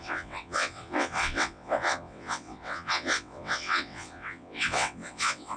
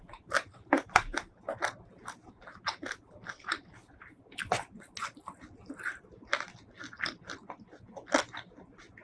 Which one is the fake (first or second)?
first